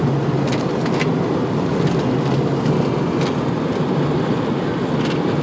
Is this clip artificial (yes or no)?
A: no